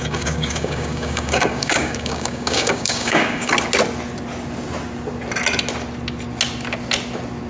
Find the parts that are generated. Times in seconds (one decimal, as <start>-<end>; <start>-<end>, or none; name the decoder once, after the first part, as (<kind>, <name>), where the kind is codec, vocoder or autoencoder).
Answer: 0.0-3.5 (codec, DAC)

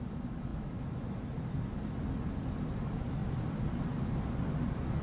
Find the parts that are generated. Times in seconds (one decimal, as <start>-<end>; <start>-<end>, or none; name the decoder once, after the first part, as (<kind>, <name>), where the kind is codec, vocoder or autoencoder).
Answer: 0.5-1.2 (vocoder, BigVGAN v2); 3.2-3.8

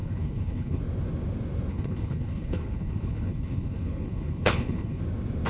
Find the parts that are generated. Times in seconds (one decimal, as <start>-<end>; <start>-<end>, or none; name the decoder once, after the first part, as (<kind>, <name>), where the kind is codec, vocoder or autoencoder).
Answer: 0.0-0.8 (codec, HILCodec); 1.7-5.0

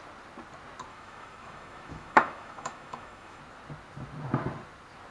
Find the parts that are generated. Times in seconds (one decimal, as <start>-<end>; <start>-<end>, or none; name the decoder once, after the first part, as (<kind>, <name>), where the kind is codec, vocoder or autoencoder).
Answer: 0.9-3.4 (autoencoder, DAC-VAE)

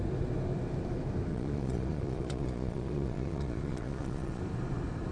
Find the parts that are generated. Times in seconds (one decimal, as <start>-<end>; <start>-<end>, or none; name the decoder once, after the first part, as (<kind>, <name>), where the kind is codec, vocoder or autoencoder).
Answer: 1.3-4.4 (vocoder, Vocos)